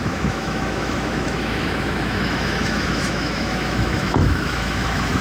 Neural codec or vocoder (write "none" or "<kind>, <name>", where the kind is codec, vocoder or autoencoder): autoencoder, DAC-VAE